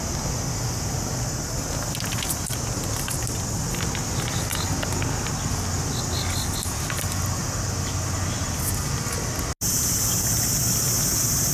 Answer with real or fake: real